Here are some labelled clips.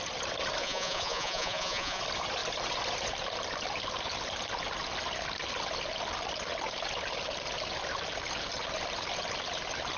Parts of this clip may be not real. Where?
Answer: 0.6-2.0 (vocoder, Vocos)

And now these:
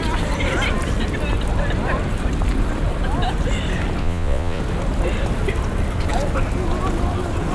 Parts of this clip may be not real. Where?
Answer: 4.0-4.6 (vocoder, Vocos)

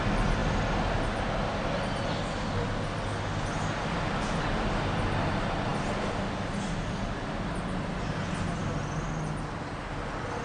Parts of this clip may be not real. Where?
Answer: none

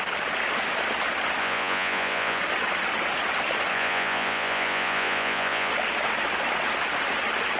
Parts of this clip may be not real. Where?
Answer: 1.4-2.4 (vocoder, Vocos); 3.7-5.7

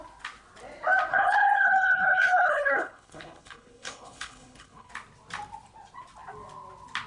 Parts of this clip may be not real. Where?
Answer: 1.1-4.9 (codec, HILCodec)